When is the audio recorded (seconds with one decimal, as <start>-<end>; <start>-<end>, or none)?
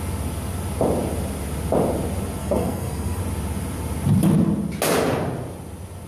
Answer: 0.0-2.4; 3.2-6.1